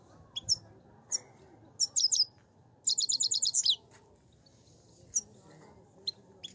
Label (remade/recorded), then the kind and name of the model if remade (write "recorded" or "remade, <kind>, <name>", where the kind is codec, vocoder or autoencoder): recorded